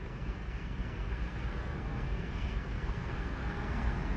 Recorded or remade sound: remade